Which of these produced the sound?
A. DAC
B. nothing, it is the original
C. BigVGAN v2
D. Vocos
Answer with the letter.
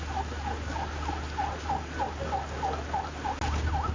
B